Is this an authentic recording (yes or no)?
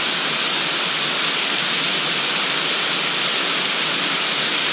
yes